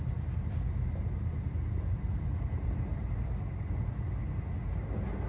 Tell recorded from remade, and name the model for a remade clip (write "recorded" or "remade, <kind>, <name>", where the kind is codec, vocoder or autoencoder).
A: recorded